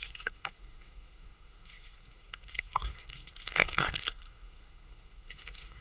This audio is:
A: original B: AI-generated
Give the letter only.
B